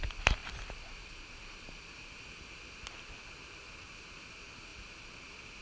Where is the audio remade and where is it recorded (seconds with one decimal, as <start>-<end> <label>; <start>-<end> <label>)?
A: 0.0-5.6 recorded